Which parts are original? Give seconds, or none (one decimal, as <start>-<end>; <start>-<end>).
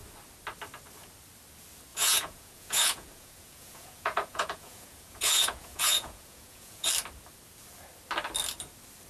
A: 0.0-1.9; 6.9-9.1